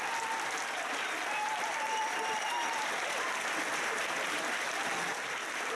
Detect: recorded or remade remade